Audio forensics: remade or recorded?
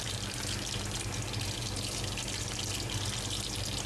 recorded